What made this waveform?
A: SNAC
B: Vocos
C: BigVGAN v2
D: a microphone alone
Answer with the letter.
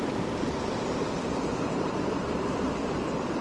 D